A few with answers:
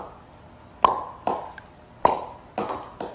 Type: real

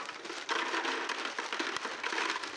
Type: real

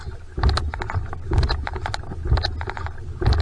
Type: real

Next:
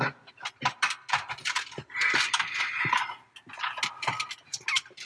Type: real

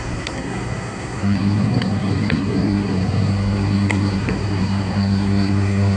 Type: fake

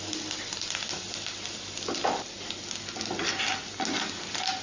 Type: real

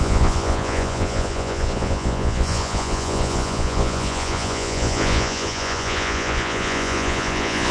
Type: fake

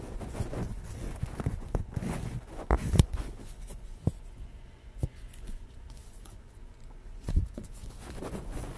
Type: fake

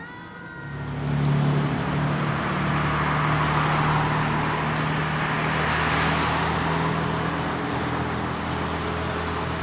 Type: real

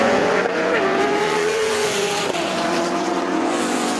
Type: fake